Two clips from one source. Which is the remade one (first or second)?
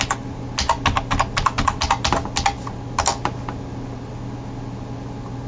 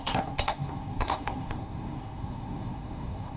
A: second